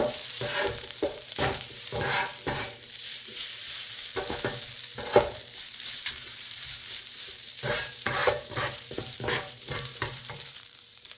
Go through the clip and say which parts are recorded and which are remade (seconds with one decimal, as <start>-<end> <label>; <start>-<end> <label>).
0.0-3.6 remade; 3.6-5.6 recorded; 5.6-11.2 remade